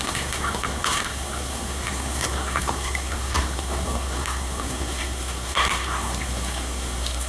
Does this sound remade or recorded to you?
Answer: remade